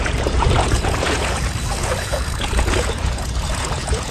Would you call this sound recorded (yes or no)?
no